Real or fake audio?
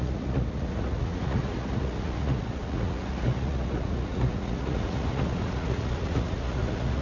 fake